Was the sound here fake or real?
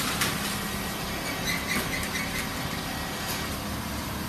real